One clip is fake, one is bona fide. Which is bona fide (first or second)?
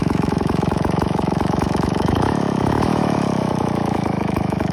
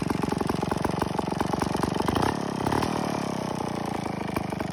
second